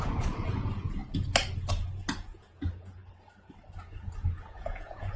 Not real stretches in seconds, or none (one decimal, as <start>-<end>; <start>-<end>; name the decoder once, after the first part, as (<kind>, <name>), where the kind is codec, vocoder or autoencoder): 0.0-1.0 (vocoder, Vocos); 1.7-3.0; 3.8-5.2